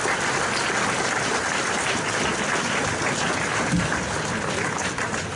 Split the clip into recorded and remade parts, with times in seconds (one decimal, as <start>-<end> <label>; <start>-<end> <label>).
0.0-5.4 recorded